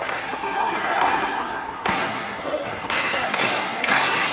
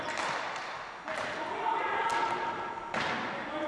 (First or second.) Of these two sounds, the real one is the second